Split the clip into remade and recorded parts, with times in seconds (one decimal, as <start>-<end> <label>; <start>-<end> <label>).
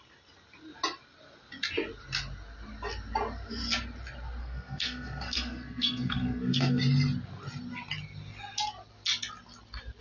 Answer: 0.0-4.4 recorded; 4.4-6.8 remade; 6.8-10.0 recorded